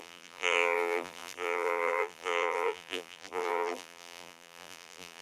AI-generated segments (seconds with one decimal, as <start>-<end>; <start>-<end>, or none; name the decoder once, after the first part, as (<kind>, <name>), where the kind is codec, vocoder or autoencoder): 0.0-5.2 (vocoder, BigVGAN v2)